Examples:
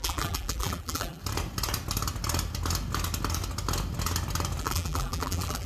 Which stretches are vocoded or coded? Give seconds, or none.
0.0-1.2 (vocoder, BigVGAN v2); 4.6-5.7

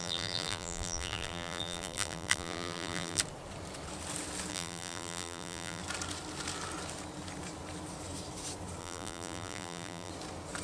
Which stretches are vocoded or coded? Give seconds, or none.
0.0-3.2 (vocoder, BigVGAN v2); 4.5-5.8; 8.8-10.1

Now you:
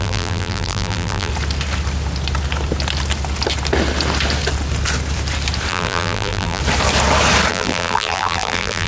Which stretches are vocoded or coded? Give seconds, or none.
0.0-1.3 (vocoder, BigVGAN v2); 5.7-6.6; 7.5-8.9

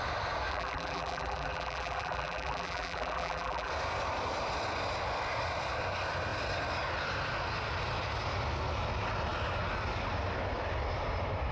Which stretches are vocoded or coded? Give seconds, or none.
0.5-3.7 (vocoder, BigVGAN v2)

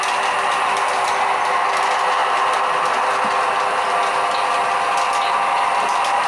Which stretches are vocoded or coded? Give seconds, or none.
none

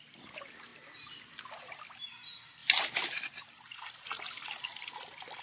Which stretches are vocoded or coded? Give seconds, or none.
0.0-0.7 (vocoder, BigVGAN v2); 2.0-5.4

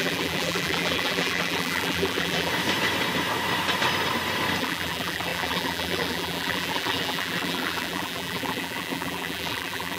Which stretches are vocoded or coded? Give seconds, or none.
0.0-2.5 (vocoder, BigVGAN v2); 4.6-10.0

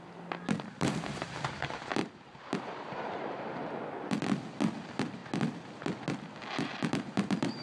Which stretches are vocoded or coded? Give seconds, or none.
0.0-3.6 (vocoder, BigVGAN v2); 4.8-5.2; 6.9-7.6